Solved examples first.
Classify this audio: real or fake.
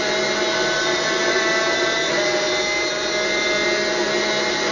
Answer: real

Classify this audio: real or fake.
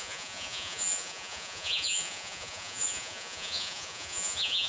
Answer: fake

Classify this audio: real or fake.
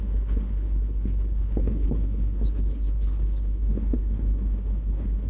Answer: fake